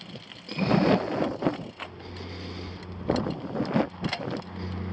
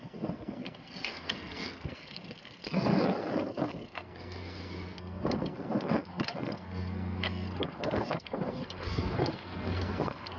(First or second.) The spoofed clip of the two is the second